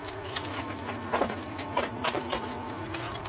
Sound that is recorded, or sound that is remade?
remade